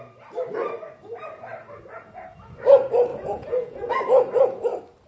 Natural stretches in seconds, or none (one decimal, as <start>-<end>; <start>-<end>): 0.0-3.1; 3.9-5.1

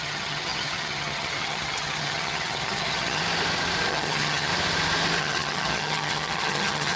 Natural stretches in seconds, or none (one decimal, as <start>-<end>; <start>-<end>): 3.2-3.9; 4.5-5.2

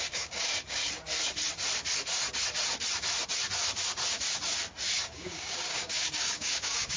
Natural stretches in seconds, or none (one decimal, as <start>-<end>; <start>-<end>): 0.8-5.0

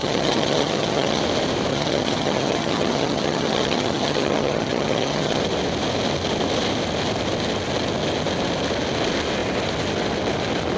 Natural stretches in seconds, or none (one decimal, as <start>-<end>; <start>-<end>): 1.2-1.7; 5.4-10.8

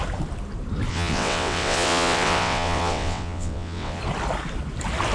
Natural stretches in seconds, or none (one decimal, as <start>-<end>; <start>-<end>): 0.0-0.9; 4.0-5.1